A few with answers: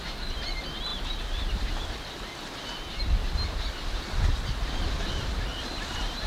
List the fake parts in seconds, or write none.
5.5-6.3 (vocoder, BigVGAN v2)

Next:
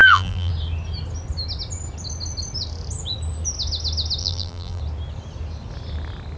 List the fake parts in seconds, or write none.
0.0-0.5 (vocoder, BigVGAN v2); 4.2-4.8

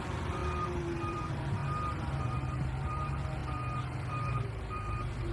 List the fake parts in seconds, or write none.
0.0-0.4 (vocoder, BigVGAN v2); 1.1-1.6; 2.2-3.4; 4.1-5.3

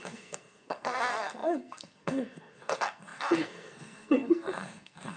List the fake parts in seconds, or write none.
0.0-5.2 (codec, SNAC)

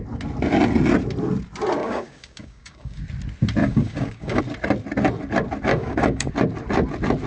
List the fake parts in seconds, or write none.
1.8-3.0 (codec, DAC); 3.6-4.4; 5.7-6.3